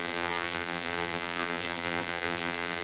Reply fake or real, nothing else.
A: fake